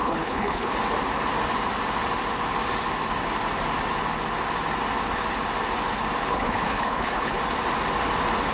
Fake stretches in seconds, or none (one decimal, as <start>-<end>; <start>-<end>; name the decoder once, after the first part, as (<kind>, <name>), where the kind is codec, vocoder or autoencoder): 0.0-0.7 (codec, HILCodec); 6.3-7.4

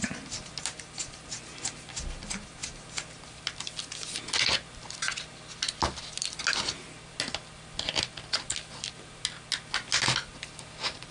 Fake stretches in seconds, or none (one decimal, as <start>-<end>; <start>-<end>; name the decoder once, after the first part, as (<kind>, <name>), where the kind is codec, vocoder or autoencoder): none

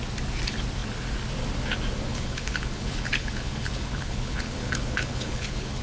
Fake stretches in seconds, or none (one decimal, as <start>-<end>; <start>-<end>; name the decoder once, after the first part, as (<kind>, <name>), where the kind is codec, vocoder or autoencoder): 2.1-5.8 (codec, HILCodec)

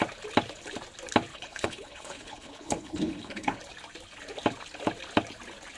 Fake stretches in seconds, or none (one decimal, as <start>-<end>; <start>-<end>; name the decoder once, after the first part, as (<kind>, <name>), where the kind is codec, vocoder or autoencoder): 1.3-3.6 (codec, HILCodec)

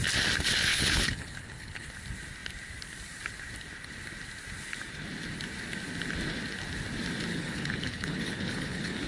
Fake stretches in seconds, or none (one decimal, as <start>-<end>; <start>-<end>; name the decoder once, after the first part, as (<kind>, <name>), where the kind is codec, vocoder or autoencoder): 0.7-1.9 (codec, HILCodec); 7.3-9.1

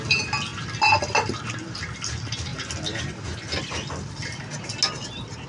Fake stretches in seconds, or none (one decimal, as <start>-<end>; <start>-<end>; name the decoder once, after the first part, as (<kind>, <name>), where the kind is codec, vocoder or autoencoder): none

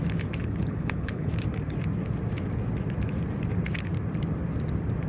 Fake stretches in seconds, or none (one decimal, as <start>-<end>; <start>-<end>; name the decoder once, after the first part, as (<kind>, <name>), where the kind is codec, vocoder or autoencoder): 0.4-1.3 (codec, HILCodec)

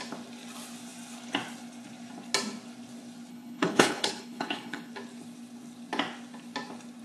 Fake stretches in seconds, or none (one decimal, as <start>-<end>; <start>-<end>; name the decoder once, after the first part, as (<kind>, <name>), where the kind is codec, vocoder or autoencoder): 3.3-4.9 (codec, HILCodec)